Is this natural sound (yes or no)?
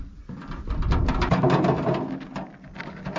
yes